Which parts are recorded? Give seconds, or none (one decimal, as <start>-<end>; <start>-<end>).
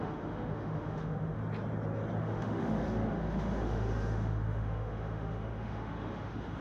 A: 1.4-2.2